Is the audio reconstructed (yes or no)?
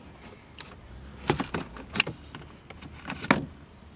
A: no